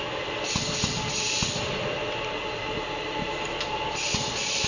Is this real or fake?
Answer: real